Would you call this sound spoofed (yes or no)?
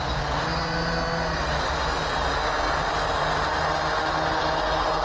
no